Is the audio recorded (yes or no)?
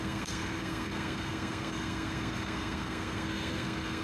no